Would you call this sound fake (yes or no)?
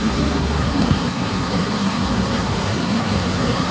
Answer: yes